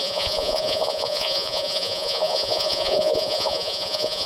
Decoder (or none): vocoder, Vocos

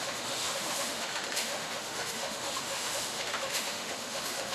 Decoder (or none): autoencoder, DAC-VAE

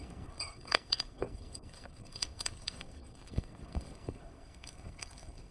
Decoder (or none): codec, SNAC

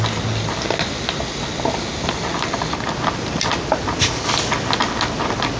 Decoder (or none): none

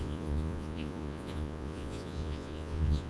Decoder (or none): vocoder, Vocos